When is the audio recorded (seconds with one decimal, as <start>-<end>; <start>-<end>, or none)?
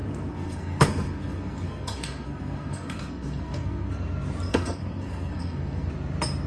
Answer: 3.9-4.5; 5.9-6.5